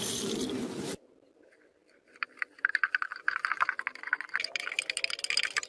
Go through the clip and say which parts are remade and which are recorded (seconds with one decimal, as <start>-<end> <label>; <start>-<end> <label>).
0.0-5.7 recorded